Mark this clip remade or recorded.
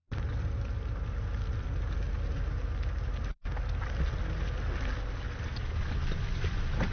recorded